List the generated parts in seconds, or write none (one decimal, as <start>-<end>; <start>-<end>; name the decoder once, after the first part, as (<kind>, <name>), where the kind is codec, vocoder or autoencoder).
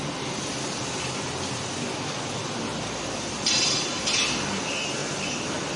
2.7-3.6 (vocoder, BigVGAN v2)